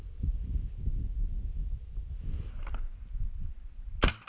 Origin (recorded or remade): recorded